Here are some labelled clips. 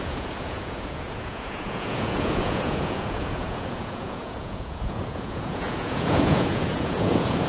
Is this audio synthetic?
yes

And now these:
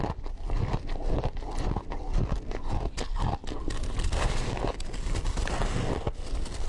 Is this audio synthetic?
no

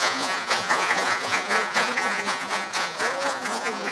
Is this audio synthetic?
yes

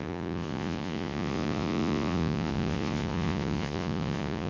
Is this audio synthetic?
yes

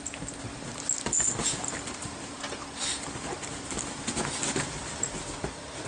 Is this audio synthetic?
no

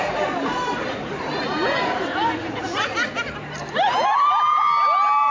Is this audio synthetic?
no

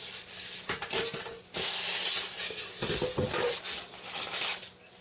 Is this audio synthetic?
no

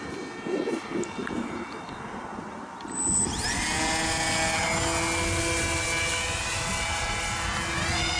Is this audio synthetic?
no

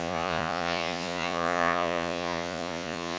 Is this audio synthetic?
yes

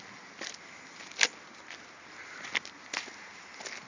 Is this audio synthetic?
no